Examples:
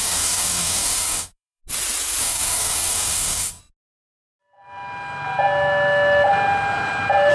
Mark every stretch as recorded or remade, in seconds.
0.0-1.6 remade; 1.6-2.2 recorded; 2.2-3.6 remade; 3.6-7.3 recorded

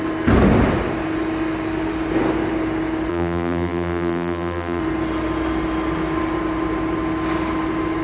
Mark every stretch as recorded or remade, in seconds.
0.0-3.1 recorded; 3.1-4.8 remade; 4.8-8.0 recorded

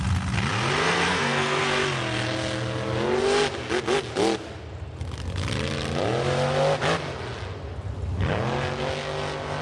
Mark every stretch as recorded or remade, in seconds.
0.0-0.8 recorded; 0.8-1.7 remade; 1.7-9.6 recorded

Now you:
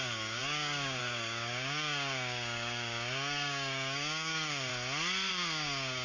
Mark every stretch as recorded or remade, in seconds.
0.0-4.7 remade; 4.7-5.3 recorded; 5.3-6.0 remade